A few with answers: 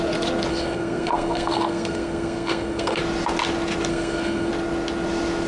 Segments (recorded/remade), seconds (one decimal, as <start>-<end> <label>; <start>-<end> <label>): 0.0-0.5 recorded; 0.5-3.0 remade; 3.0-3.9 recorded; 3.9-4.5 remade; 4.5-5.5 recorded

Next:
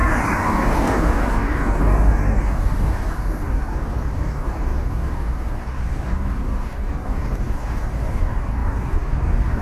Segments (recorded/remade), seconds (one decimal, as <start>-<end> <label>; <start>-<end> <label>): 0.0-9.6 remade

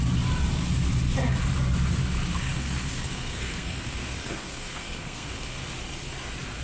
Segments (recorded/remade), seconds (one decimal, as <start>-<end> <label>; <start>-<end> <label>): 0.0-2.3 recorded; 2.3-5.6 remade; 5.6-6.6 recorded

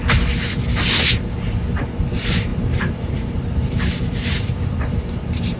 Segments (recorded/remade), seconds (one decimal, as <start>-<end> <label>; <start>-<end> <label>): 0.0-2.5 recorded; 2.5-5.6 remade